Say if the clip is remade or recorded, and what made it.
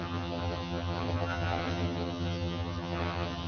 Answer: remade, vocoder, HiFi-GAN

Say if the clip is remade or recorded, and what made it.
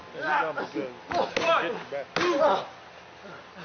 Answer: recorded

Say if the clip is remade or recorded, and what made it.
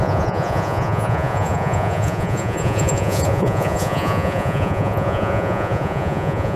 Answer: remade, vocoder, Vocos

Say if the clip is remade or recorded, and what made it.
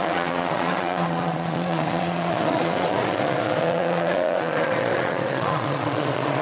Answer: remade, vocoder, Vocos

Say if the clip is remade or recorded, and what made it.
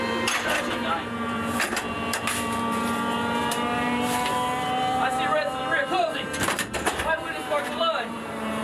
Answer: remade, vocoder, BigVGAN v2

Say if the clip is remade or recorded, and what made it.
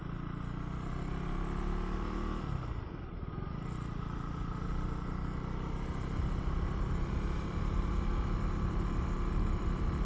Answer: recorded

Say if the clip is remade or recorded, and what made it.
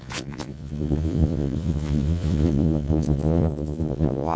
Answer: remade, vocoder, Vocos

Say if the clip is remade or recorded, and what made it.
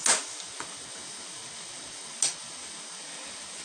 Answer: recorded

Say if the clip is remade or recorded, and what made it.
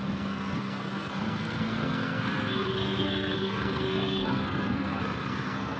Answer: remade, codec, SNAC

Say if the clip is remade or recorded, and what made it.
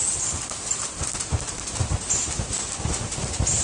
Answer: recorded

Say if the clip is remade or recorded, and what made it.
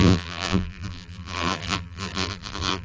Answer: remade, vocoder, BigVGAN v2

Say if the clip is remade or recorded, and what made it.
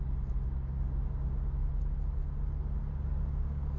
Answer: recorded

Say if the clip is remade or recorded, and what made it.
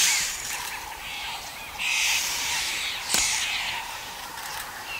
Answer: remade, vocoder, BigVGAN v2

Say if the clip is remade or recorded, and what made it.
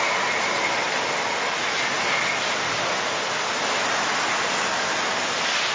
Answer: recorded